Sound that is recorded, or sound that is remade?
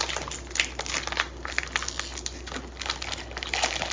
recorded